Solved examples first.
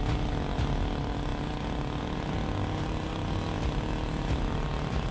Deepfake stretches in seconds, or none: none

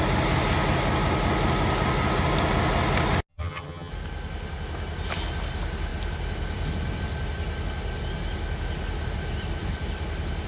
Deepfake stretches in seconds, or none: 3.3-3.9 (vocoder, HiFi-GAN)

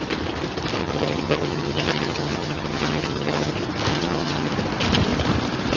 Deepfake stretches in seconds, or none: 0.8-3.5 (vocoder, HiFi-GAN); 3.9-4.5